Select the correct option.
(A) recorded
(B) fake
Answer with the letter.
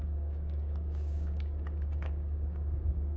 B